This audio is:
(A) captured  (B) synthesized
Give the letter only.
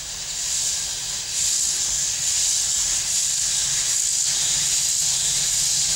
A